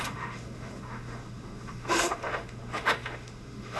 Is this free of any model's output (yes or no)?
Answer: no